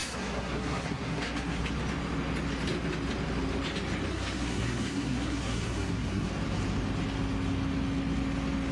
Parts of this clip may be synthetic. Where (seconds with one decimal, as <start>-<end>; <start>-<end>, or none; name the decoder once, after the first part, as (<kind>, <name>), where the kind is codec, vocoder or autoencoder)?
0.0-1.6 (codec, SNAC); 4.1-6.3